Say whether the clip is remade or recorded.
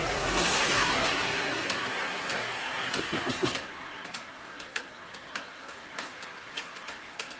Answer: remade